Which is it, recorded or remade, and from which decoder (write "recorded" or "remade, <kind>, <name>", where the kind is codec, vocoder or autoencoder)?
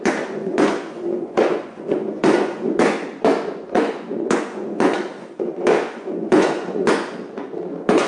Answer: remade, vocoder, Vocos